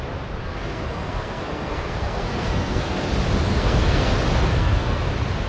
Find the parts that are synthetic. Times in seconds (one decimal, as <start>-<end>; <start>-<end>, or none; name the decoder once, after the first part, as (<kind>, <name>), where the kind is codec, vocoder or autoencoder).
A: 0.4-3.1 (codec, SNAC); 3.5-4.1; 4.5-5.1